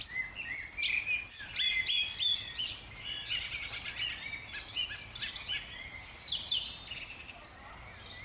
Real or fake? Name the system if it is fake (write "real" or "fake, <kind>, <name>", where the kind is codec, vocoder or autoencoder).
real